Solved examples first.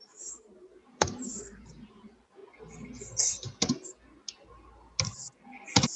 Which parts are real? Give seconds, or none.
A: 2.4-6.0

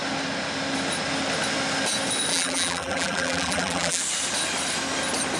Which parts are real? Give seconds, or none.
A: 0.0-2.3; 4.0-5.4

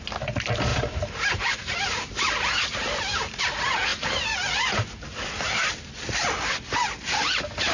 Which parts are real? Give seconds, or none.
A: 0.0-0.7; 3.4-7.7

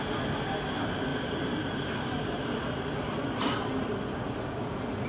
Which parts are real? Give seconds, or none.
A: 0.0-1.1; 2.8-3.4; 3.9-5.1